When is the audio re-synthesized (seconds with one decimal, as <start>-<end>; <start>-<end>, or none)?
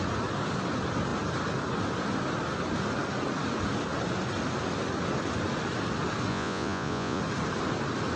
6.3-7.2